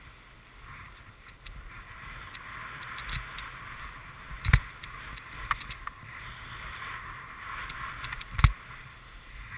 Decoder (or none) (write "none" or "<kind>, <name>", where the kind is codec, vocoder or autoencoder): none